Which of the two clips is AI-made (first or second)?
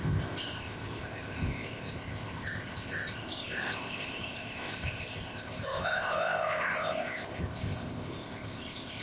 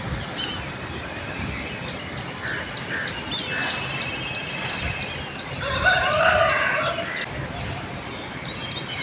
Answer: first